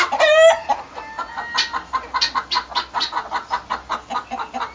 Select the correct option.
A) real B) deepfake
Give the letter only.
A